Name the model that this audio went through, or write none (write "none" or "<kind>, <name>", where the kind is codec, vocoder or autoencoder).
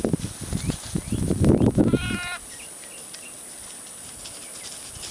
none